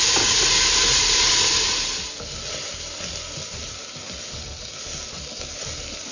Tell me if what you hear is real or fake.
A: real